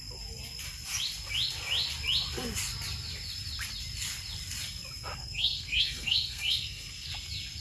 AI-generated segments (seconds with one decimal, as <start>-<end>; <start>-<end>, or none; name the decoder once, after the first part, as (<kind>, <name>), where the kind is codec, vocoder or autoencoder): 5.2-7.1 (codec, SNAC)